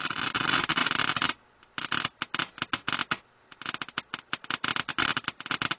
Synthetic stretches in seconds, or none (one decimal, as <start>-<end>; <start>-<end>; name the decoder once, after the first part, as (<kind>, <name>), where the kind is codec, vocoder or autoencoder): none